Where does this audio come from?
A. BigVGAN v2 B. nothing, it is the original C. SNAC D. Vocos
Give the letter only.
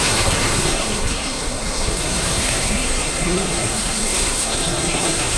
C